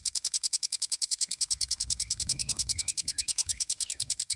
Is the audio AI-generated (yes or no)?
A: yes